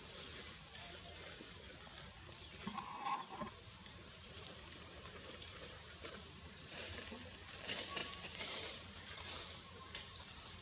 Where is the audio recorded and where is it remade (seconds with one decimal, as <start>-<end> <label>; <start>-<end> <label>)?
0.0-2.7 recorded; 2.7-6.9 remade; 6.9-8.0 recorded; 8.0-10.6 remade